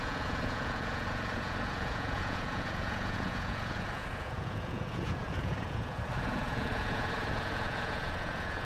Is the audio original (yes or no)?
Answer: no